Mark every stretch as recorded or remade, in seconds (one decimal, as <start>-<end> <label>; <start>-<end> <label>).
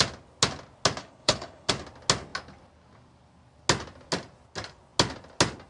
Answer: 0.0-1.0 recorded; 1.0-1.7 remade; 1.7-5.7 recorded